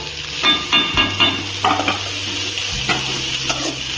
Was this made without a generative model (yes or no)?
yes